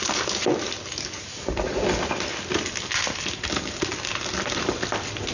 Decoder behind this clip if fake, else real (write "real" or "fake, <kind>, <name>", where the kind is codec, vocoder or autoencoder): real